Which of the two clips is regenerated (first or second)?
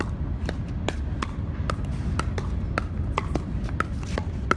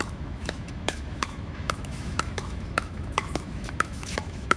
second